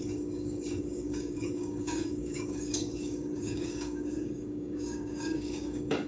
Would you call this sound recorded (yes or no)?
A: no